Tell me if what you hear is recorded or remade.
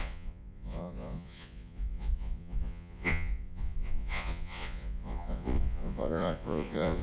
remade